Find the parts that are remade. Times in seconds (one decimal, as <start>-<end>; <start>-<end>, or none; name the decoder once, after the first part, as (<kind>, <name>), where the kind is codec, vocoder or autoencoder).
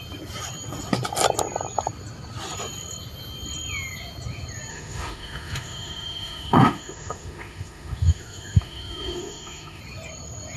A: 4.7-9.8 (autoencoder, DAC-VAE)